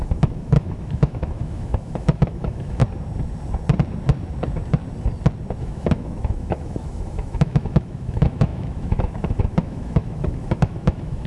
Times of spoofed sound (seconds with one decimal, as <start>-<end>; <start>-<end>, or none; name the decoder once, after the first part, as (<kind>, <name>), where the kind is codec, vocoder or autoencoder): 0.0-2.8 (autoencoder, DAC-VAE); 5.6-11.3